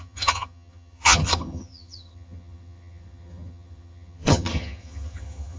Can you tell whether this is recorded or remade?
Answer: remade